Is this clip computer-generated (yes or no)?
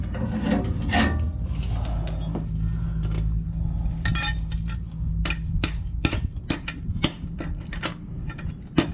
no